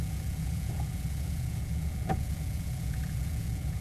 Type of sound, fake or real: fake